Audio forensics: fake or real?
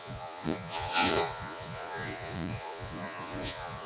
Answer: fake